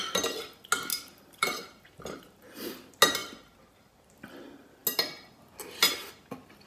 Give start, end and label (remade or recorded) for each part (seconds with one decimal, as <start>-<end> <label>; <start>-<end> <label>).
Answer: 0.0-0.9 recorded; 0.9-2.5 remade; 2.5-3.2 recorded; 3.2-4.1 remade; 4.1-6.7 recorded